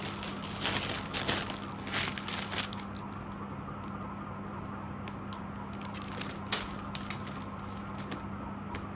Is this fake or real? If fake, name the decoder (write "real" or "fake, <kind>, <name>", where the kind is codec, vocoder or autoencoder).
real